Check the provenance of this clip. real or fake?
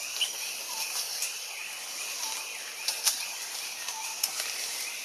real